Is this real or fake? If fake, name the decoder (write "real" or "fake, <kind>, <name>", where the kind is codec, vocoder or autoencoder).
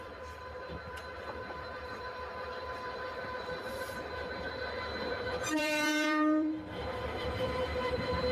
fake, vocoder, BigVGAN v2